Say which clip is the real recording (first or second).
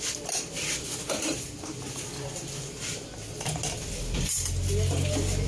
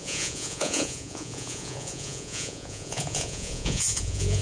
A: first